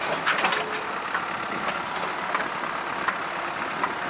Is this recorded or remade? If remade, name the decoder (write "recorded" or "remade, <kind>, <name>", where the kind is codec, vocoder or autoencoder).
recorded